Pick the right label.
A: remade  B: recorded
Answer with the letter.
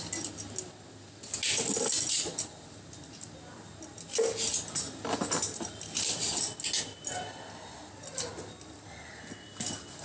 B